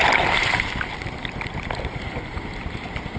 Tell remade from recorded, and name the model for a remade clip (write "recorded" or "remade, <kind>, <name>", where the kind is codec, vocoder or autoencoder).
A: recorded